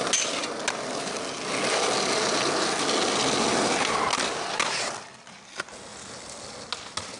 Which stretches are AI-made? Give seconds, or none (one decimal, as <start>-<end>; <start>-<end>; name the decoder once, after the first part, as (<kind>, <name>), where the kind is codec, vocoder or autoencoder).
none